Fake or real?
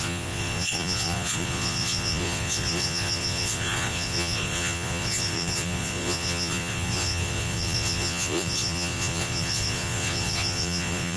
fake